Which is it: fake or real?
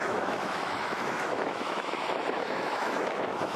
fake